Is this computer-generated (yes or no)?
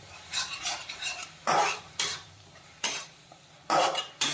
yes